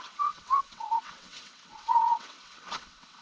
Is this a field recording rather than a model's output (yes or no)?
no